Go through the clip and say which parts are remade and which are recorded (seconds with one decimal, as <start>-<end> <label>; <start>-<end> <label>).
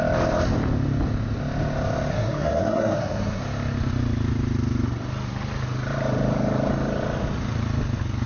0.0-2.1 recorded; 2.1-3.4 remade; 3.4-8.3 recorded